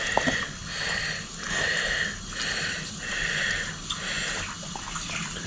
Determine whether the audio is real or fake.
real